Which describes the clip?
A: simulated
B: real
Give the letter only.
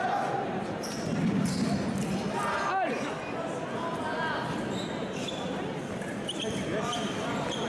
B